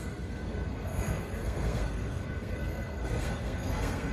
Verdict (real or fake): fake